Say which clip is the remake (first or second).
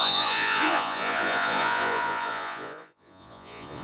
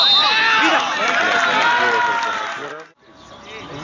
first